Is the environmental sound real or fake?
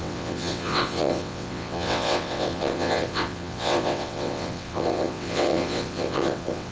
fake